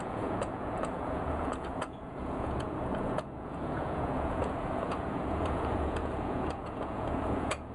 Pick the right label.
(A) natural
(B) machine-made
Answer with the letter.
B